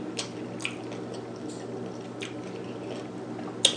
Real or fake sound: real